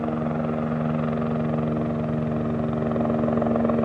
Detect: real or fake real